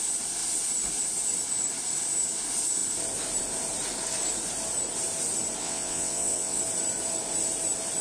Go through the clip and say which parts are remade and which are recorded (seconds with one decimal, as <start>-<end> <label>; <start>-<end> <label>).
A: 0.0-5.6 recorded; 5.6-6.6 remade; 6.6-8.0 recorded

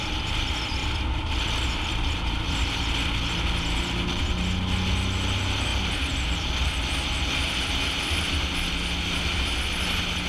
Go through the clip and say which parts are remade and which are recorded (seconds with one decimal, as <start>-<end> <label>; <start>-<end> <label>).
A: 0.0-10.3 recorded

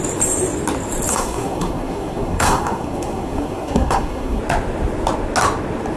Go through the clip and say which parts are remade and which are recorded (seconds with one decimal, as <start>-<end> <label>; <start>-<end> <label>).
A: 0.0-1.1 recorded; 1.1-4.4 remade; 4.4-6.0 recorded

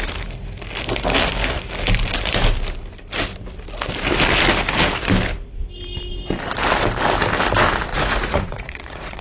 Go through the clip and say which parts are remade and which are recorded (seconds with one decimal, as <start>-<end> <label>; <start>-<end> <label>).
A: 0.0-7.9 recorded; 7.9-9.2 remade

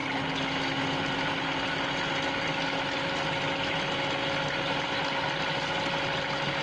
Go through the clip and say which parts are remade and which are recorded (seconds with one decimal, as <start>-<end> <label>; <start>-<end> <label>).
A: 0.0-6.6 recorded